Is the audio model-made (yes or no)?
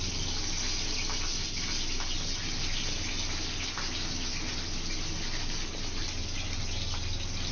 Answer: no